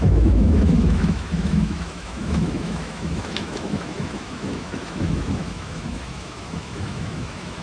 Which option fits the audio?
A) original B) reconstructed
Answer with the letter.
B